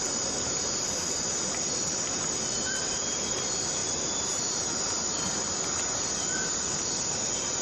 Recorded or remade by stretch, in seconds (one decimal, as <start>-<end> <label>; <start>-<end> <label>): 0.0-7.6 recorded